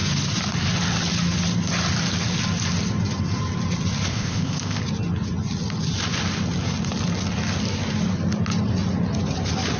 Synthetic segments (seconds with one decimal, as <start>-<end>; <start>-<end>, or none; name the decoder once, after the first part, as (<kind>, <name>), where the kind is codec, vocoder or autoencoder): 4.1-4.8 (codec, ZipCodec)